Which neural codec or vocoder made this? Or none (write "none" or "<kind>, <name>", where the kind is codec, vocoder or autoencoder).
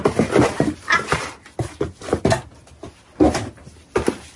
none